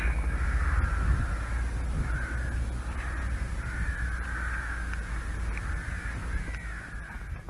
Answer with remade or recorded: recorded